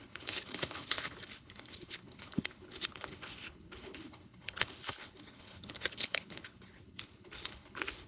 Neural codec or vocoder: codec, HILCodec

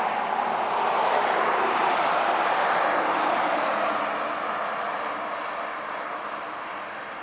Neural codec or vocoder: none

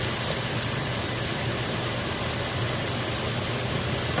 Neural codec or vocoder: none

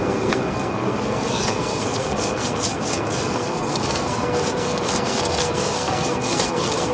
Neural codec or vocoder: codec, SNAC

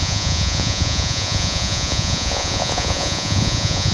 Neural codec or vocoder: vocoder, Vocos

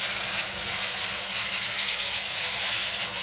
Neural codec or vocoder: codec, SNAC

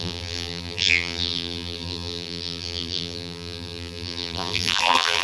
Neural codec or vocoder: vocoder, BigVGAN v2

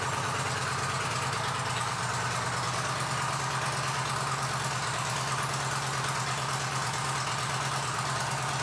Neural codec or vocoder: vocoder, BigVGAN v2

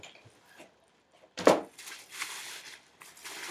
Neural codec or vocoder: vocoder, BigVGAN v2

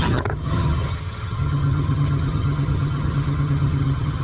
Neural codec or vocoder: vocoder, HiFi-GAN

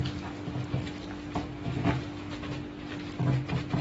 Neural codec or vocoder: none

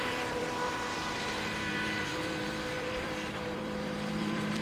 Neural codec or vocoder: vocoder, BigVGAN v2